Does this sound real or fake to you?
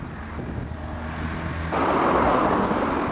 real